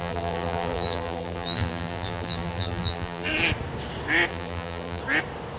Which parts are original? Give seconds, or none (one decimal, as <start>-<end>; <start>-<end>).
3.3-4.3; 5.0-5.6